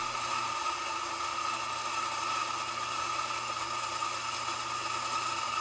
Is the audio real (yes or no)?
yes